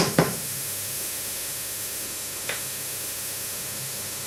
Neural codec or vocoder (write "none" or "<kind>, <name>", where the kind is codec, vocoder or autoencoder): autoencoder, DAC-VAE